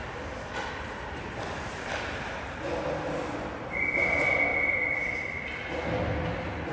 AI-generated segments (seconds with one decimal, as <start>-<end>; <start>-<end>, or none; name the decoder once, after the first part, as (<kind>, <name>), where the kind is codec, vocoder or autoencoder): none